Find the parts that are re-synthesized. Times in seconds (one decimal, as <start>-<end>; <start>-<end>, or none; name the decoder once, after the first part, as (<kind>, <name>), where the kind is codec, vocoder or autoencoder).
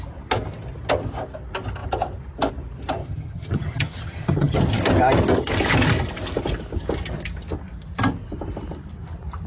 3.0-4.6 (vocoder, HiFi-GAN)